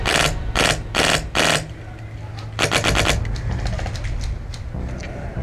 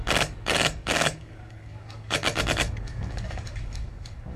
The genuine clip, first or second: first